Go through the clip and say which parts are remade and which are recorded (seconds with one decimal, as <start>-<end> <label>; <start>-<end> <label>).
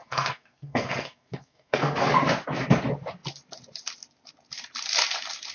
0.0-2.1 remade; 2.1-5.5 recorded